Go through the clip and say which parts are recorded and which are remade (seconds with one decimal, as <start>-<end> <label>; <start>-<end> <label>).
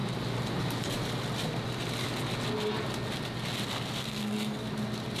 0.0-4.0 recorded; 4.0-4.7 remade; 4.7-5.2 recorded